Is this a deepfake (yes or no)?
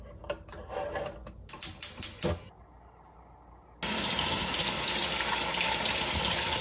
no